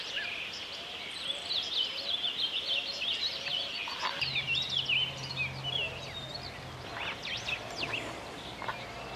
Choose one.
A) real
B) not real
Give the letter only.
A